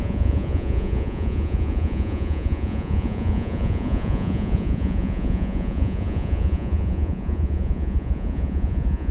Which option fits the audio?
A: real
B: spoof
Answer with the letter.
B